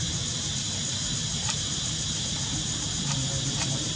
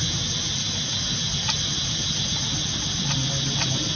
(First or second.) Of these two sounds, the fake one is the first